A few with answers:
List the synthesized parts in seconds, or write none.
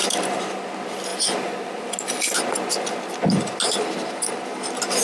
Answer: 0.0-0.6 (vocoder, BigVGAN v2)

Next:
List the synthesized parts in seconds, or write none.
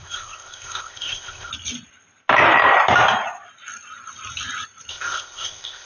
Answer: 0.0-1.5 (codec, ZipCodec); 4.9-5.9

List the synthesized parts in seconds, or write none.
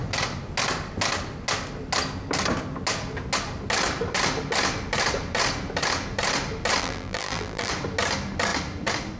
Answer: 6.8-7.7 (vocoder, BigVGAN v2)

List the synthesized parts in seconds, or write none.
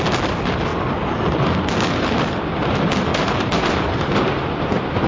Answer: 3.1-4.2 (vocoder, BigVGAN v2)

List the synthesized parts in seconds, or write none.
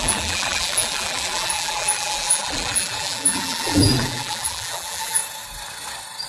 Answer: 0.0-5.2 (vocoder, BigVGAN v2)